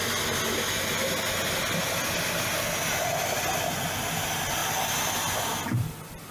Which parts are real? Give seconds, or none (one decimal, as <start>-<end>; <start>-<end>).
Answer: 0.0-6.3

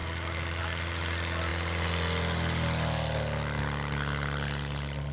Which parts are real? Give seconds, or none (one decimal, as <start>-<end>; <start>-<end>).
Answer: 0.0-5.1

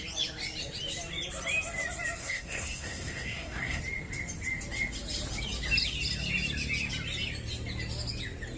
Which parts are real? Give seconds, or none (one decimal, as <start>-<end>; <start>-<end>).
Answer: 0.0-2.2; 3.8-8.6

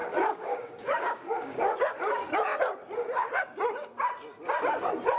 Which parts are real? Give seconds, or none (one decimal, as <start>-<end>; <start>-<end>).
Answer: 2.0-5.2

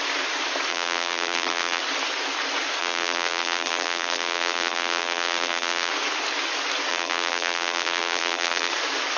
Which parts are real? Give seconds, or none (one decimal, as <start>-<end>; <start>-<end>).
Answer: 0.0-0.7; 1.8-2.8; 5.9-6.9; 8.7-9.2

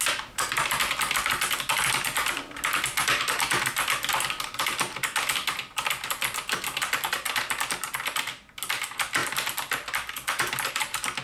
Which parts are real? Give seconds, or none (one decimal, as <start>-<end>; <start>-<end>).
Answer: 0.0-11.2

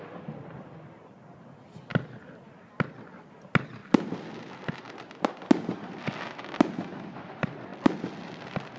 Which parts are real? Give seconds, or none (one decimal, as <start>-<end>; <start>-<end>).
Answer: 0.0-8.8